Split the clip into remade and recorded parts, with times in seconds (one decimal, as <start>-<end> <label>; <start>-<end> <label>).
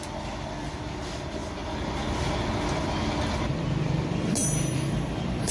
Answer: 0.0-4.4 recorded; 4.4-5.5 remade